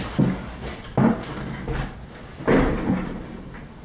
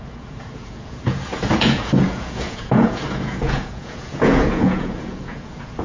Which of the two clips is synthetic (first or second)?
second